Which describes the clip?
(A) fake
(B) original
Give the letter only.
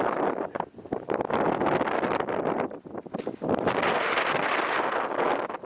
B